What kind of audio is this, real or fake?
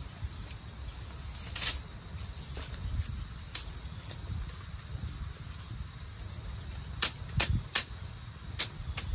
real